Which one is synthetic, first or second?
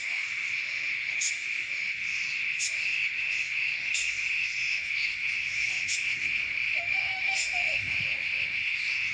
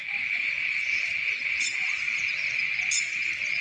first